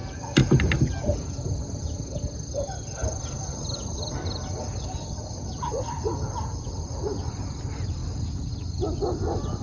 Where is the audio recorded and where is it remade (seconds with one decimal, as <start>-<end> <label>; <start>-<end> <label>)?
0.0-9.6 recorded